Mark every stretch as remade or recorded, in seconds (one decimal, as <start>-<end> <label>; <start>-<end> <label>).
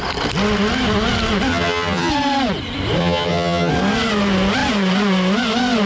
0.0-1.5 recorded; 1.5-2.1 remade; 2.1-3.0 recorded; 3.0-3.7 remade; 3.7-5.9 recorded